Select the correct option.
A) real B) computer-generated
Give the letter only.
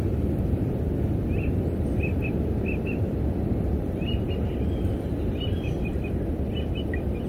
A